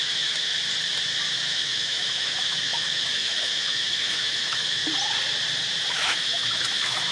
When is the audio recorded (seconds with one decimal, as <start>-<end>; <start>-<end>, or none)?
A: 0.5-1.3; 4.8-5.9